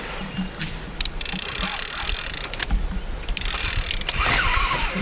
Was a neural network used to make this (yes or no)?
no